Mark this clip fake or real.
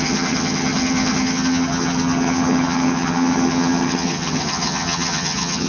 fake